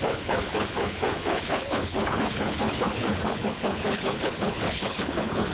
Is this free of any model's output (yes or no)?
no